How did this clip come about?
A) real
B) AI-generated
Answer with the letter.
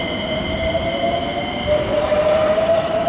B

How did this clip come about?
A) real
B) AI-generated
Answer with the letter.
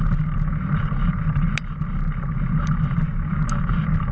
A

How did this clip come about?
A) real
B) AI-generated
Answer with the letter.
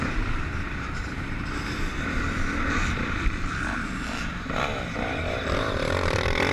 B